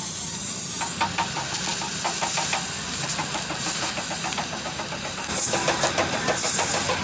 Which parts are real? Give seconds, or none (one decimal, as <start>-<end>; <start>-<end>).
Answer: 0.0-7.0